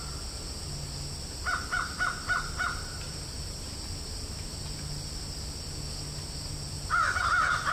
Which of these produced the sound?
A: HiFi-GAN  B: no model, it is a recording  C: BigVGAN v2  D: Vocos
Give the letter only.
B